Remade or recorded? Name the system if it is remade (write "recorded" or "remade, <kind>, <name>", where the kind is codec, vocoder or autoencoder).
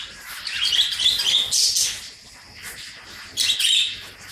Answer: recorded